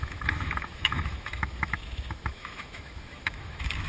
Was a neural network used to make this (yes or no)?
yes